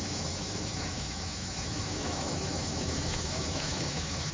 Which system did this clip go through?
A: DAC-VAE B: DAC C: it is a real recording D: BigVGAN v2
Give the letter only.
A